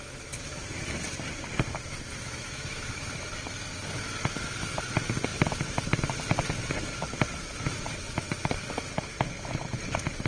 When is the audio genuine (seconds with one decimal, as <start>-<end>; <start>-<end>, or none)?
0.0-1.9; 3.3-10.3